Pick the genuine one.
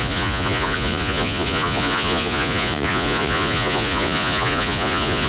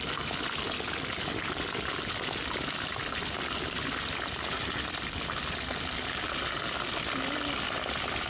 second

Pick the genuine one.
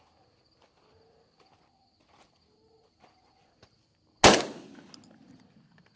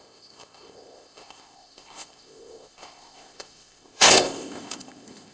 first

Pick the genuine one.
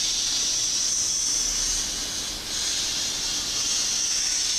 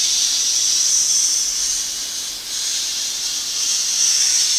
first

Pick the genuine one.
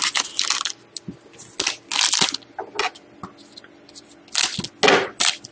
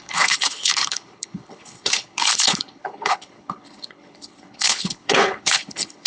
first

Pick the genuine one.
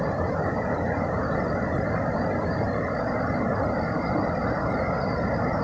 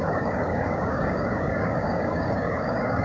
first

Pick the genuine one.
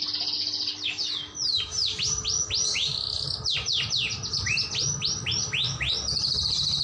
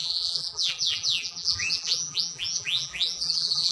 first